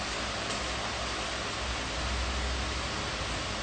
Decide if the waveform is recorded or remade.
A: recorded